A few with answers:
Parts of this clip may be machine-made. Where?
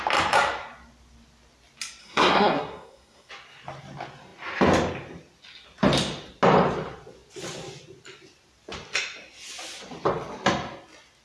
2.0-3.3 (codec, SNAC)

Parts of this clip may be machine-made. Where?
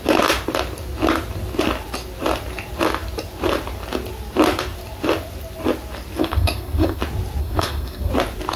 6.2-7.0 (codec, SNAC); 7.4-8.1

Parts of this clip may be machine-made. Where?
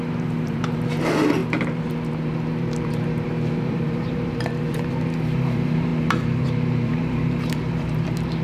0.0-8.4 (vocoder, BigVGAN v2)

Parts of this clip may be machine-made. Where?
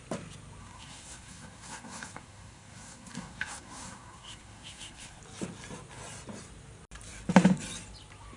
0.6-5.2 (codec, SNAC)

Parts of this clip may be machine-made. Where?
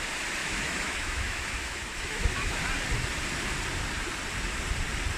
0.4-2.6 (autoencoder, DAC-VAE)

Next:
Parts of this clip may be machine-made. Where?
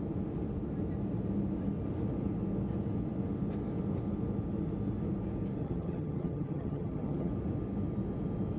5.6-7.3 (vocoder, HiFi-GAN)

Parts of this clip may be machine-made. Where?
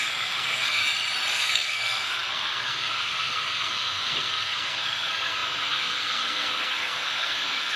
0.0-0.8 (codec, SNAC); 1.3-7.8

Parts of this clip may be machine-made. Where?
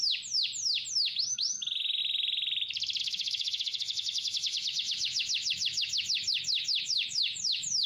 0.9-2.0 (autoencoder, DAC-VAE); 3.0-7.9